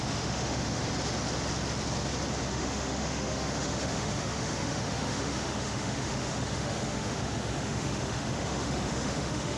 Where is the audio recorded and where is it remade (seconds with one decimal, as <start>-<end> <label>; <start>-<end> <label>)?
0.0-0.8 remade; 0.8-2.5 recorded; 2.5-9.6 remade